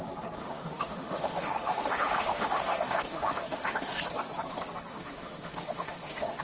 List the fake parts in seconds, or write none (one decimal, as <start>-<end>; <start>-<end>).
0.4-4.0; 4.9-6.4